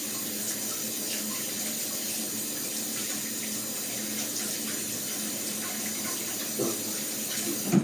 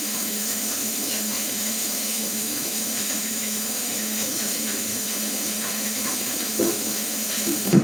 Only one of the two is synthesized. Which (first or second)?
second